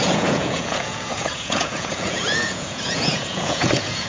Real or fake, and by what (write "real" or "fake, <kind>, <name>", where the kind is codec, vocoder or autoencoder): fake, vocoder, Vocos